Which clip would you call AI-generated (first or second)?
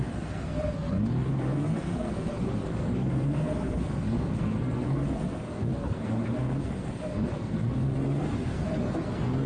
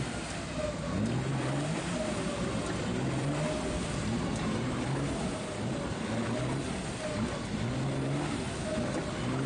first